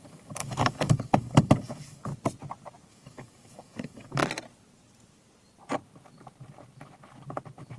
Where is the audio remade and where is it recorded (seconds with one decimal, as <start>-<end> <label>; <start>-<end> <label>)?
0.0-2.1 remade; 2.1-2.9 recorded; 2.9-4.2 remade; 4.2-7.8 recorded